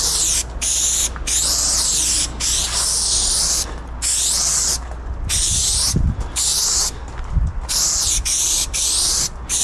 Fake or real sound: real